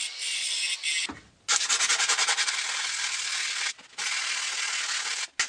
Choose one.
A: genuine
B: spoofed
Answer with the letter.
A